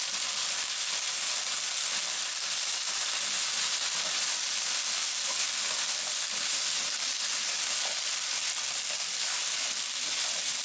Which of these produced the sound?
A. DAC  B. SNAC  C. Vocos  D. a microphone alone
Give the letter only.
D